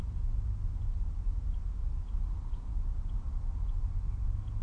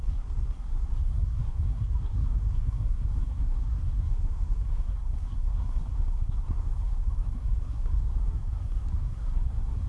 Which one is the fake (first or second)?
second